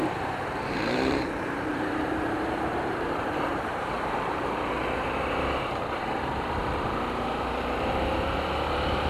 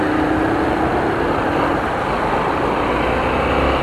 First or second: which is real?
second